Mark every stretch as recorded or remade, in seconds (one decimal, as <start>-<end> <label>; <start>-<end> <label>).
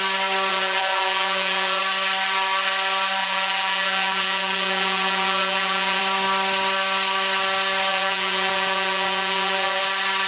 0.0-0.5 recorded; 0.5-1.8 remade; 1.8-3.2 recorded; 3.2-6.0 remade; 6.0-7.9 recorded; 7.9-9.8 remade; 9.8-10.3 recorded